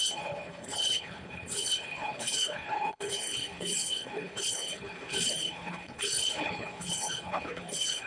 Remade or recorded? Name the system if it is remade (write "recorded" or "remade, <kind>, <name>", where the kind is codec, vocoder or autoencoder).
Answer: remade, codec, HILCodec